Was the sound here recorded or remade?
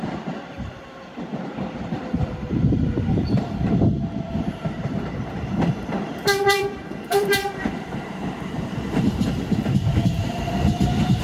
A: remade